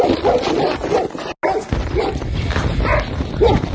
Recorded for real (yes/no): yes